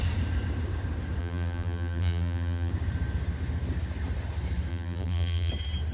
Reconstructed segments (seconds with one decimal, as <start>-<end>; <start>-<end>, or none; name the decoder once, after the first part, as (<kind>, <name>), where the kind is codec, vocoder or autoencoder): 1.2-2.7 (vocoder, BigVGAN v2); 4.7-5.5